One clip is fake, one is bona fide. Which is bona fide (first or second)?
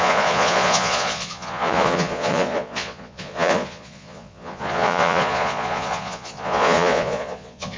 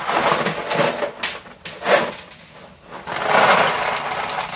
second